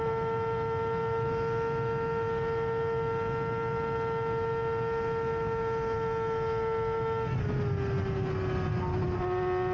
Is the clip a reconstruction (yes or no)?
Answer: no